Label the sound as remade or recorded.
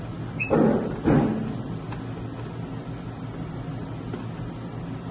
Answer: recorded